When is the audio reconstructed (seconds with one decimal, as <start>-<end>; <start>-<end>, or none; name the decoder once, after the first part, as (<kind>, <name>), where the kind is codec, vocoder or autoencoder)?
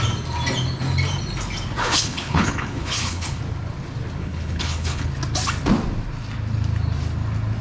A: 1.8-3.4 (codec, HILCodec); 4.2-5.1